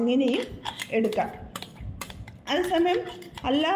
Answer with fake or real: real